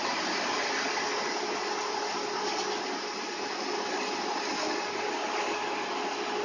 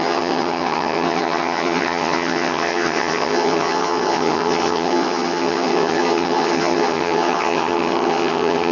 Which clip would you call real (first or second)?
first